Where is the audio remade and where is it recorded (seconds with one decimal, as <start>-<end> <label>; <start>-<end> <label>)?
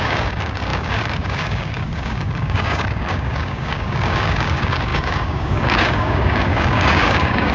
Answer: 0.0-7.5 remade